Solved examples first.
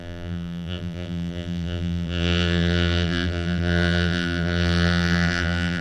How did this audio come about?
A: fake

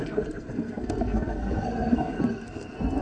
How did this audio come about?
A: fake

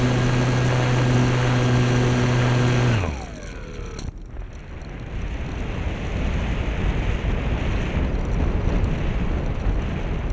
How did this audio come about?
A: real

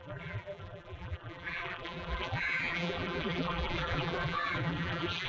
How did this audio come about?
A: fake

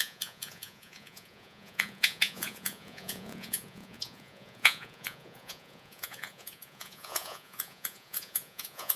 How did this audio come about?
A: fake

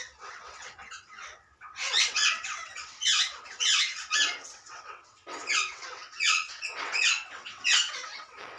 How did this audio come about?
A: fake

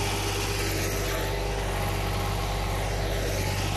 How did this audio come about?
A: real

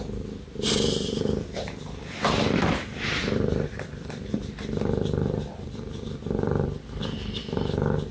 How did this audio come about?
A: fake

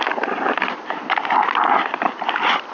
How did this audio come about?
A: real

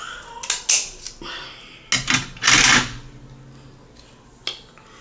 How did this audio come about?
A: real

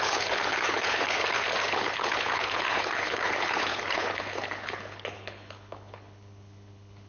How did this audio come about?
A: fake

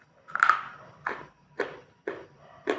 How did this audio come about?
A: fake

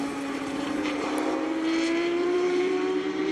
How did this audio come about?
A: fake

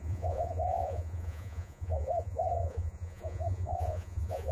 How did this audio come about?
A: fake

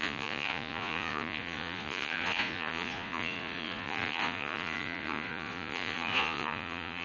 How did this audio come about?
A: fake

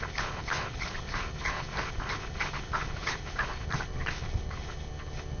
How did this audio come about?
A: fake